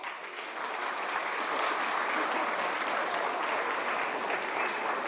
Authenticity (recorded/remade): recorded